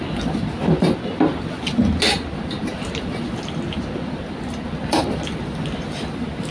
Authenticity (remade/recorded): recorded